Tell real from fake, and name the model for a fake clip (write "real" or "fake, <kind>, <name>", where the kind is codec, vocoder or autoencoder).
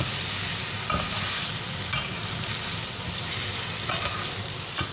real